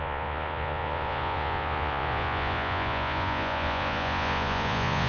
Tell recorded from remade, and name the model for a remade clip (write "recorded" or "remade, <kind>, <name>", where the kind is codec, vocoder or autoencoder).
remade, vocoder, Vocos